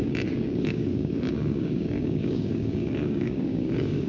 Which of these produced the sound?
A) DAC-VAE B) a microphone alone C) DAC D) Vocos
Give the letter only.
C